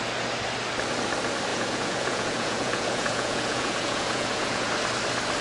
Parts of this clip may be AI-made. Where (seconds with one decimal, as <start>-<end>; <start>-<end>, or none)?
1.5-4.7